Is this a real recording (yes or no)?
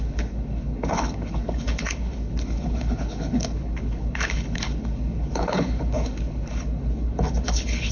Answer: no